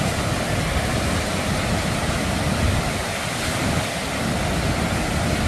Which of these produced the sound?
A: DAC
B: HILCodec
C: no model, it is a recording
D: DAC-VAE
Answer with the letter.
C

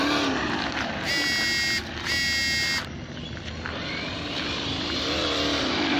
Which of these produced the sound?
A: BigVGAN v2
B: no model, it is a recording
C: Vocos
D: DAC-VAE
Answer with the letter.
B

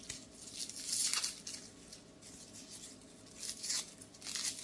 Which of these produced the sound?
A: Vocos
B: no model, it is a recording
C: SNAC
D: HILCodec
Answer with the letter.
B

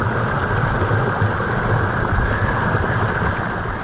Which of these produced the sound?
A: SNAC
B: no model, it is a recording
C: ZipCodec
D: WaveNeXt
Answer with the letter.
B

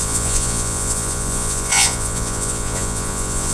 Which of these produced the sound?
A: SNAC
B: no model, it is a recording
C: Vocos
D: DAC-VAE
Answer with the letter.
C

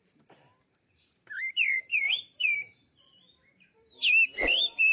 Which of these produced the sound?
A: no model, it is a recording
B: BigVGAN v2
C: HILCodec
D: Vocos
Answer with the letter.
B